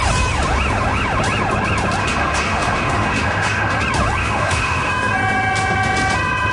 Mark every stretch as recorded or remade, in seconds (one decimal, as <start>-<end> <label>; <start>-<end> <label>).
0.0-2.0 recorded; 2.0-3.8 remade; 3.8-4.2 recorded; 4.2-4.9 remade; 4.9-6.5 recorded